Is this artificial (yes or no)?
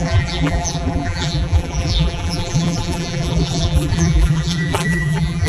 yes